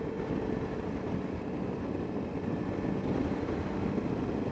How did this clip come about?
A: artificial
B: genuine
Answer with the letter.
B